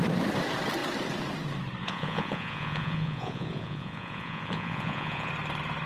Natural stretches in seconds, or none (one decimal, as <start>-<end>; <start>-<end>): 0.0-1.8; 5.3-5.9

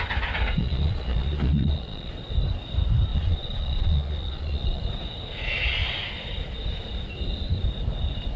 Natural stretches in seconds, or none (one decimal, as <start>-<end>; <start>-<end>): 0.0-0.6; 2.1-3.1; 4.8-8.4